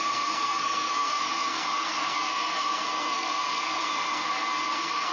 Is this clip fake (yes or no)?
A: yes